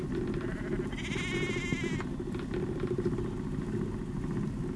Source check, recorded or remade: recorded